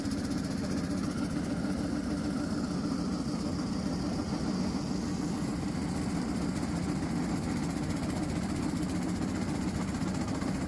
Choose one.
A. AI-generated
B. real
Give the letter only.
B